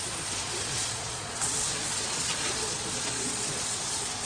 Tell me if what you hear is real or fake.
fake